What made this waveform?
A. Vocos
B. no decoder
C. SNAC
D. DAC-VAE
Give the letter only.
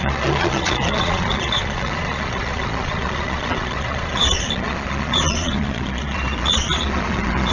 A